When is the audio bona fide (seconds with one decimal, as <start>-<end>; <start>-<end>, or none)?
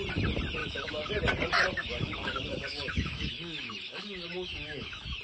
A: 0.0-0.6; 1.1-1.8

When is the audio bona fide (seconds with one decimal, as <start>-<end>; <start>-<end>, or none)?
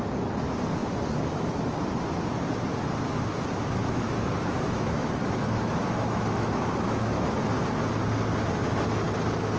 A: 0.0-3.8; 7.3-9.6